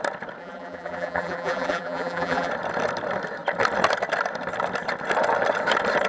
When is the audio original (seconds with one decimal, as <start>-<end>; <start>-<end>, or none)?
0.0-0.4; 2.5-6.1